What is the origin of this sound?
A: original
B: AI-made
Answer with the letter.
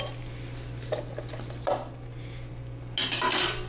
A